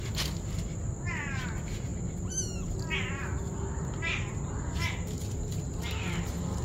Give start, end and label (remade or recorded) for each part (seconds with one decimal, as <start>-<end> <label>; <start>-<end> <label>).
0.0-6.6 recorded